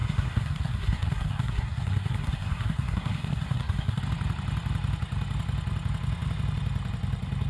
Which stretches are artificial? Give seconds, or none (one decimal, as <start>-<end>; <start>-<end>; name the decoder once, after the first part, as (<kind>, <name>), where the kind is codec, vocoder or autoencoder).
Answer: 0.0-4.0 (codec, SNAC)

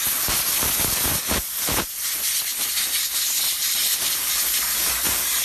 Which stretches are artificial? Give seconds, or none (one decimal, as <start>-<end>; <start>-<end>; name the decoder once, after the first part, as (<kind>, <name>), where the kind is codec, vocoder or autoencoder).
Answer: 0.0-2.5 (vocoder, BigVGAN v2)

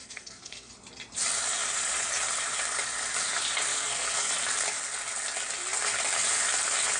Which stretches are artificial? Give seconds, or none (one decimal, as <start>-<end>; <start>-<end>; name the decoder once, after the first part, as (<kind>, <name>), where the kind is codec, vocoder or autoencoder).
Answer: 0.0-0.7 (codec, SNAC); 3.7-4.3

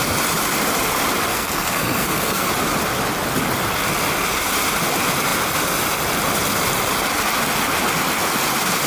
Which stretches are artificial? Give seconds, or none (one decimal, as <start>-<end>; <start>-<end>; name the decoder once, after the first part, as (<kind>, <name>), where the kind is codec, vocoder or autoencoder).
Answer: 1.3-2.5 (codec, SNAC)

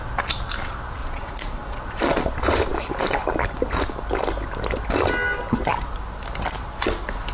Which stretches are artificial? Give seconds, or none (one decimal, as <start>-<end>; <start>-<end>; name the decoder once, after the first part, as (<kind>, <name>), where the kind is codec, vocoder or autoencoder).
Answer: 1.0-2.0 (vocoder, Vocos)

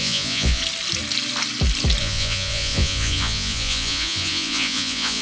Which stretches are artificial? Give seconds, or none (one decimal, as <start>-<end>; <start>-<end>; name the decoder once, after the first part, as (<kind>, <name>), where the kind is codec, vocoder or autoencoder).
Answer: 0.0-0.6 (vocoder, Vocos); 2.0-5.2